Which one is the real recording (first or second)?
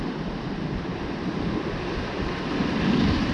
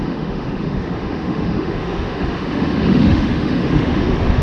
first